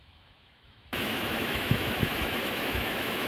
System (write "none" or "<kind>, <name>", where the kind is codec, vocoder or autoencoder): autoencoder, DAC-VAE